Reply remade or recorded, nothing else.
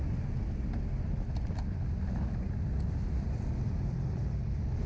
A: recorded